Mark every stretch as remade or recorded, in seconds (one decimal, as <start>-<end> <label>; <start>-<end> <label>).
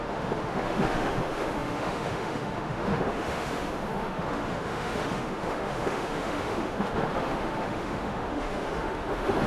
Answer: 0.0-9.5 remade